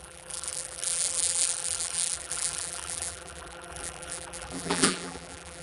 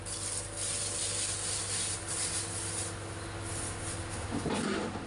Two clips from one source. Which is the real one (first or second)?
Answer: second